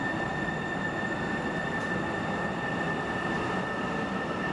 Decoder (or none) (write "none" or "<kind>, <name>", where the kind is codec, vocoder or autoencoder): none